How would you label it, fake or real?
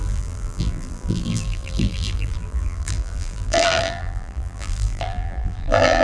fake